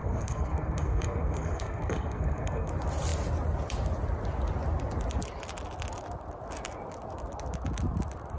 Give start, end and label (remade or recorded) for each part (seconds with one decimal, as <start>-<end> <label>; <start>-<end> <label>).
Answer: 0.0-2.7 remade; 2.7-8.4 recorded